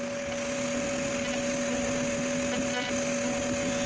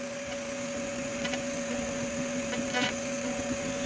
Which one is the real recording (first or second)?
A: first